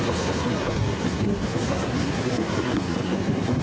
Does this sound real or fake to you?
fake